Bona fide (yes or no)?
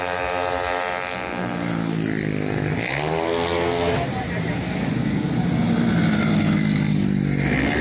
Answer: yes